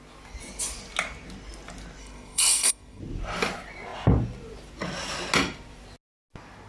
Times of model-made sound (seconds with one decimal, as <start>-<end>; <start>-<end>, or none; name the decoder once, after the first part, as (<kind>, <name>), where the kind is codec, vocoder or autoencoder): 2.0-3.0 (codec, SNAC)